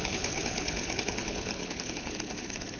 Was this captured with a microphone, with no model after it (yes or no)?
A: no